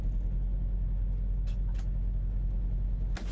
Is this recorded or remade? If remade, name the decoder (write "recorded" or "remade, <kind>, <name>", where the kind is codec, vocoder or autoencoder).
recorded